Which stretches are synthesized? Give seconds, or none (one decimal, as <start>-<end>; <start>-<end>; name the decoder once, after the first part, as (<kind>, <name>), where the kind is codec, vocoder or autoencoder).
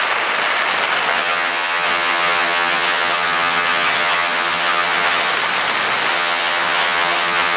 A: 1.1-5.3 (vocoder, HiFi-GAN); 6.1-7.6